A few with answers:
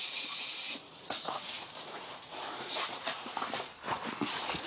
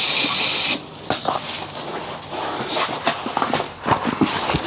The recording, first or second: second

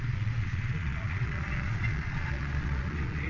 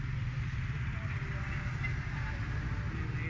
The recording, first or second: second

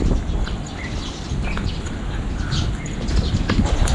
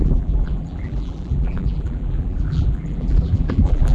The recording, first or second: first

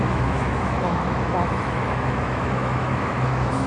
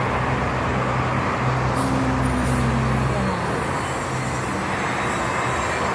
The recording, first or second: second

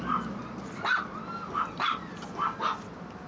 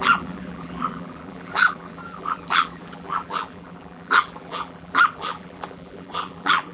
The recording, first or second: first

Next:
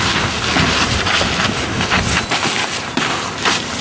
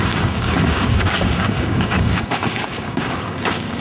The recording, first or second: first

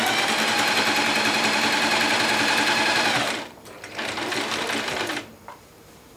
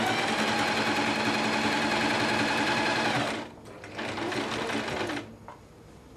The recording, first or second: second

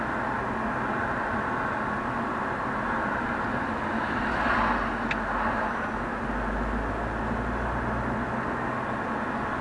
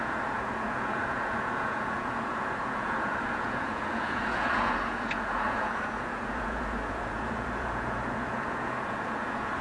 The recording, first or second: first